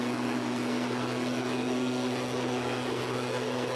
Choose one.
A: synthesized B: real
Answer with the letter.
A